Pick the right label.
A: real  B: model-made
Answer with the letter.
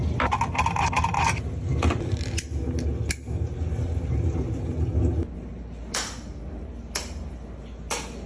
A